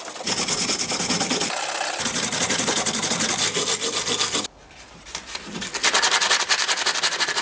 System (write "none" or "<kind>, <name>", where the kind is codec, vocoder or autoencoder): none